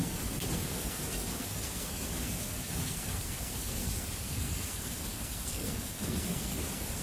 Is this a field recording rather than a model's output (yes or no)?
no